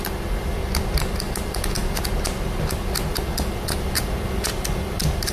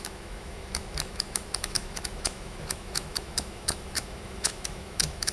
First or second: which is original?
first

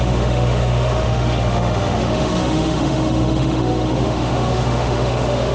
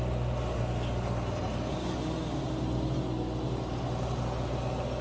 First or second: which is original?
second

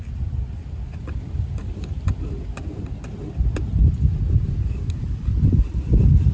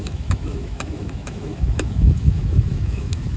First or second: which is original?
first